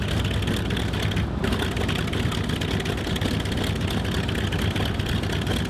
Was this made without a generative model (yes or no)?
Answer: yes